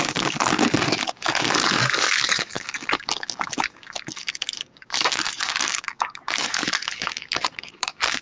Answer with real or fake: fake